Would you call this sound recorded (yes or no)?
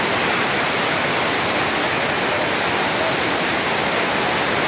yes